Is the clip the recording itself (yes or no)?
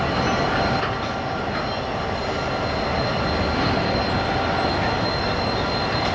yes